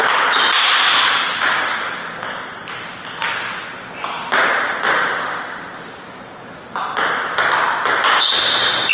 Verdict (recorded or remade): recorded